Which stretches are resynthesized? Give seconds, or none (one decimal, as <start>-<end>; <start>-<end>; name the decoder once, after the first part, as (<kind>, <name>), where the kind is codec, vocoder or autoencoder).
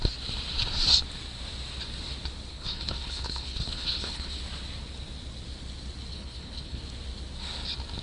2.5-4.4 (codec, HILCodec); 6.1-6.8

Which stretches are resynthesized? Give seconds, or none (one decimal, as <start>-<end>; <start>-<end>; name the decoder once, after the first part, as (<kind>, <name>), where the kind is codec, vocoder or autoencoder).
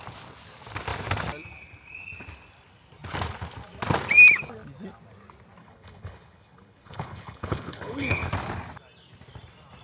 5.6-8.3 (codec, HILCodec)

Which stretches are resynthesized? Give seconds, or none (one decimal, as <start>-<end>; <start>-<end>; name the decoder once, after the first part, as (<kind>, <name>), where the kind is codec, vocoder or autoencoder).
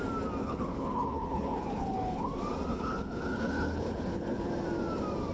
0.4-2.3 (codec, HILCodec); 2.7-4.5